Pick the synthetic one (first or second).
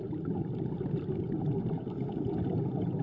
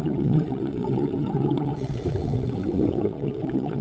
second